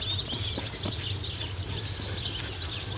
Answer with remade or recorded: recorded